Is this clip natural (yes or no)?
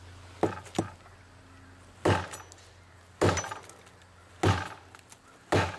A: yes